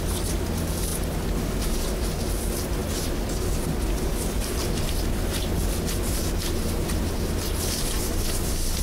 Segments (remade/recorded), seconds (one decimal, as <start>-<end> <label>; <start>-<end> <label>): 0.0-8.8 recorded